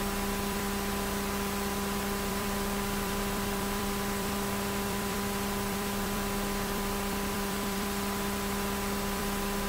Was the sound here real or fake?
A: fake